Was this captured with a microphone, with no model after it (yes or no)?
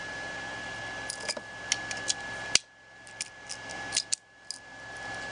yes